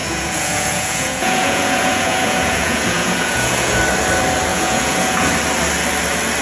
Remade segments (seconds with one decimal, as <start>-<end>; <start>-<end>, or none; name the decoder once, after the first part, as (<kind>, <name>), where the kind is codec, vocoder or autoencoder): 0.0-3.8 (vocoder, Vocos); 4.5-5.3